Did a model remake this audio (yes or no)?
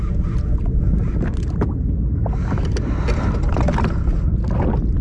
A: no